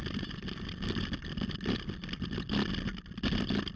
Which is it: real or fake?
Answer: real